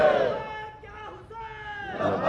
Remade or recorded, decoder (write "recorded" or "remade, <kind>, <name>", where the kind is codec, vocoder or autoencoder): recorded